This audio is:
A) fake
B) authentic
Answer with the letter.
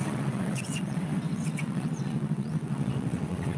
A